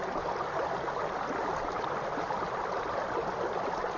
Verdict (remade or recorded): recorded